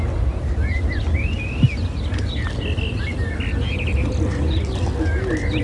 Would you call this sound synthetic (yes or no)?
no